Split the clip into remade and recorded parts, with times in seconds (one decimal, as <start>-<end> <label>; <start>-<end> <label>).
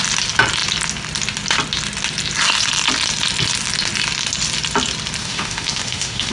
0.0-5.2 recorded; 5.2-6.3 remade